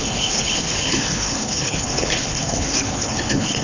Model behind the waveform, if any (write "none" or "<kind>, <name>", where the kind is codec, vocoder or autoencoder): codec, HILCodec